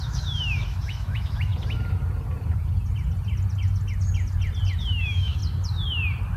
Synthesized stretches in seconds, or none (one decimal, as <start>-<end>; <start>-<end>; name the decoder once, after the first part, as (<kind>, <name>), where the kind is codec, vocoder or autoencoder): 0.0-1.5 (autoencoder, DAC-VAE); 4.8-5.4